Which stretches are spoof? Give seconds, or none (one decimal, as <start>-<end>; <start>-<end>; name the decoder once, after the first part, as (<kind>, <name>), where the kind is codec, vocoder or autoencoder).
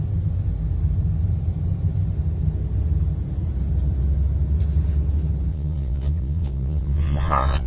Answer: 5.5-7.7 (vocoder, Vocos)